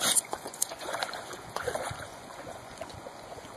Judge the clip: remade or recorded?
remade